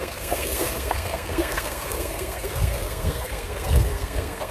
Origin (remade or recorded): remade